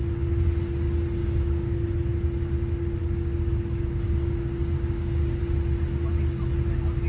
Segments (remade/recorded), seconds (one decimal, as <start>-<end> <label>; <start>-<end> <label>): 0.0-1.2 recorded; 1.2-1.9 remade; 1.9-3.0 recorded; 3.0-5.4 remade; 5.4-7.1 recorded